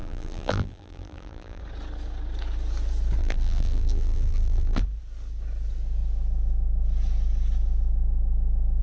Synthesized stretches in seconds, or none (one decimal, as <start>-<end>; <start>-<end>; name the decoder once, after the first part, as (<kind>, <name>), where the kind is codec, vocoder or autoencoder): 0.0-1.6 (vocoder, BigVGAN v2); 3.2-4.8